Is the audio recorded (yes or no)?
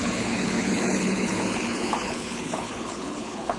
no